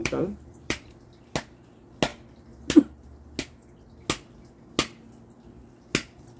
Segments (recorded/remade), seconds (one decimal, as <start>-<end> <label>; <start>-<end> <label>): 0.0-1.2 remade; 1.2-6.4 recorded